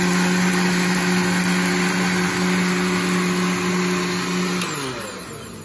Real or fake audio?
real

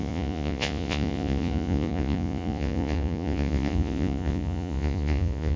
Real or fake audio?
fake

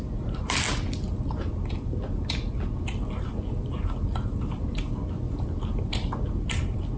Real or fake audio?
real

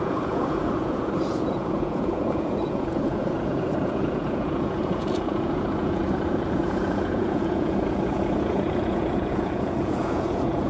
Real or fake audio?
fake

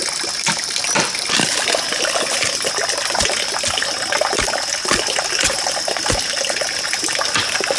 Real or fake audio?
real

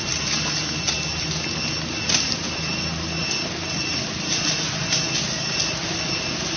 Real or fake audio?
real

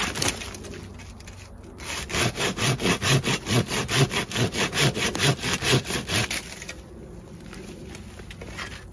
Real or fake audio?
real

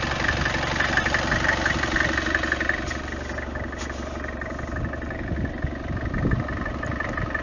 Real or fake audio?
real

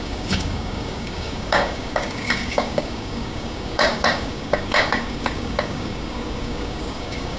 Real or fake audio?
fake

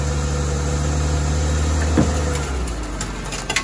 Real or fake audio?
real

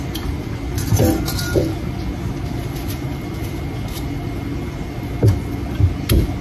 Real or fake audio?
real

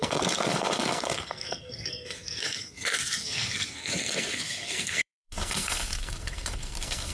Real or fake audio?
fake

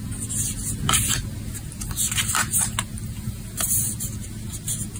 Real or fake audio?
real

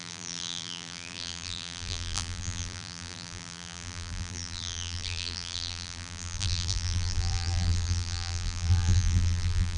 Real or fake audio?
fake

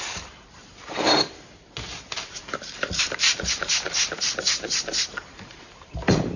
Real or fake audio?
fake